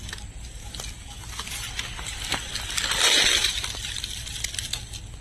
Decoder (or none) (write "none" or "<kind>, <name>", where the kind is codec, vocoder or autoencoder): none